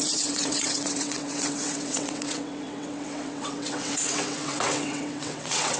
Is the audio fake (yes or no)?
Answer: yes